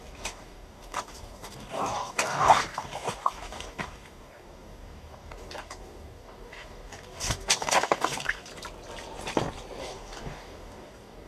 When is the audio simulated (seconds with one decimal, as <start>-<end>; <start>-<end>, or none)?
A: 0.0-8.5; 9.8-11.3